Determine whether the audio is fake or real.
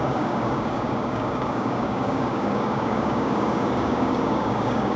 fake